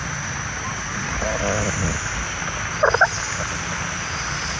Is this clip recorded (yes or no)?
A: yes